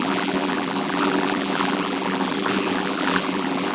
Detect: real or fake fake